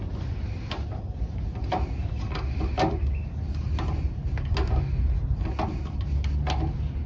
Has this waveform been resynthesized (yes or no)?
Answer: no